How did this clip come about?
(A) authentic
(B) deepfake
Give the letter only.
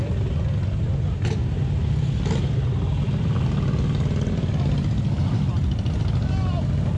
A